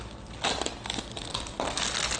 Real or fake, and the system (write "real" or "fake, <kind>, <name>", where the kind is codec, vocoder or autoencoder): real